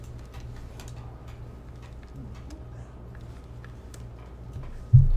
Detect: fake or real real